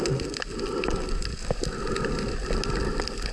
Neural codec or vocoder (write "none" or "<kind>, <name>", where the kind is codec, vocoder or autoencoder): none